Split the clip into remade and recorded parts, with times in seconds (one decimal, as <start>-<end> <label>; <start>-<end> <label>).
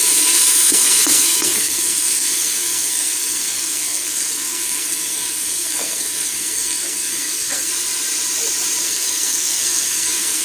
0.0-7.7 remade; 7.7-8.8 recorded; 8.8-10.4 remade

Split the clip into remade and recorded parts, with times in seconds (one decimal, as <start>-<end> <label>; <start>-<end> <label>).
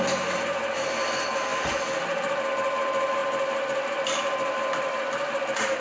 0.0-5.8 recorded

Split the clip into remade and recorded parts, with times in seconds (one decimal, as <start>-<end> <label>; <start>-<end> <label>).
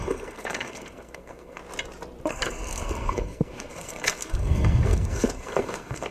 0.0-1.6 remade; 1.6-2.3 recorded; 2.3-6.1 remade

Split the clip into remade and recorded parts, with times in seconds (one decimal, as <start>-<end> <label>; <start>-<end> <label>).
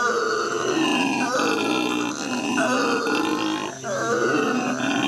0.0-5.1 recorded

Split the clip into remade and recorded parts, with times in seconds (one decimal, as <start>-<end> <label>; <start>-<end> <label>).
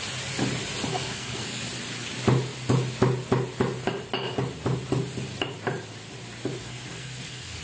0.0-0.9 recorded; 0.9-1.6 remade; 1.6-6.6 recorded; 6.6-7.6 remade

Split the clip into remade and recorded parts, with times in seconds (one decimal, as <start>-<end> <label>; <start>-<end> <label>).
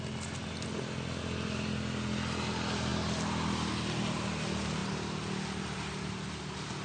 0.0-6.8 recorded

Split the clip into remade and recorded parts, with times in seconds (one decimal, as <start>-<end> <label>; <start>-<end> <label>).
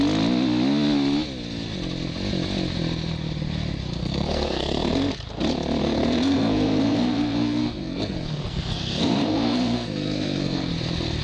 0.0-4.0 recorded; 4.0-5.2 remade; 5.2-5.8 recorded; 5.8-10.7 remade; 10.7-11.2 recorded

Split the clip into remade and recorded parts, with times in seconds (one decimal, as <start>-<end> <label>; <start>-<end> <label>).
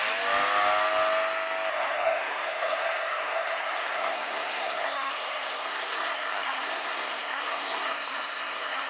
0.0-1.7 recorded; 1.7-8.9 remade